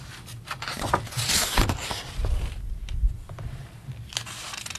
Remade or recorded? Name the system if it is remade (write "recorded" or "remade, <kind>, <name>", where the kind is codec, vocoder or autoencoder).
recorded